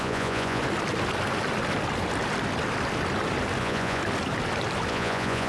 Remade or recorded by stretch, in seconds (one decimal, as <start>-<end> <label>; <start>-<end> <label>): 0.0-0.6 remade; 0.6-3.6 recorded; 3.6-4.0 remade; 4.0-4.9 recorded; 4.9-5.5 remade